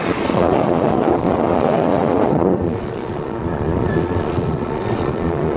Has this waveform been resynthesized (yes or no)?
yes